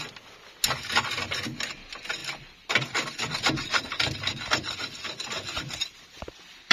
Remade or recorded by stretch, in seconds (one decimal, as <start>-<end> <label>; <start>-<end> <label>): 0.0-2.2 recorded; 2.2-6.2 remade; 6.2-6.7 recorded